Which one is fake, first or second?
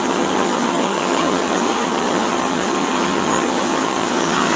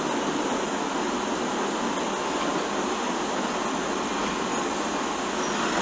first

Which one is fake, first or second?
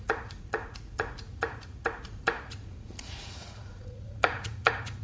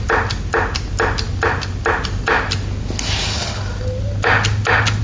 first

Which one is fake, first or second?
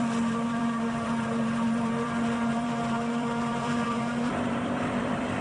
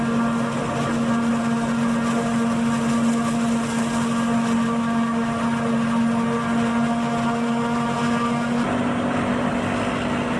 first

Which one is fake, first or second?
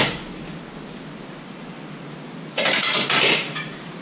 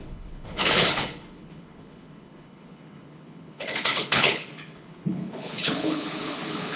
second